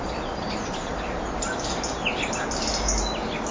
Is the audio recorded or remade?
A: recorded